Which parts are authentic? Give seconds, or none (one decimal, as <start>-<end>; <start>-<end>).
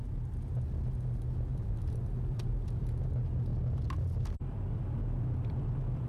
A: 0.0-1.5; 2.5-6.1